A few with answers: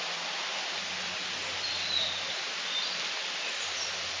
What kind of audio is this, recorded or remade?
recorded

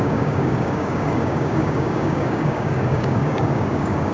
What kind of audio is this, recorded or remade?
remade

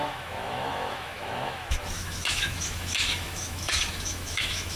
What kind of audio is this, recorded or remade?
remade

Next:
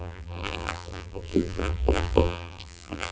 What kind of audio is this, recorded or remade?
remade